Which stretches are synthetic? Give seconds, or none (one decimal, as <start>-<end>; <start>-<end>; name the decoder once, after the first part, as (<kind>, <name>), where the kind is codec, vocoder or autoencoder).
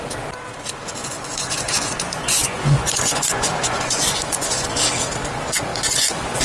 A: 1.0-4.8 (vocoder, Vocos); 5.7-6.4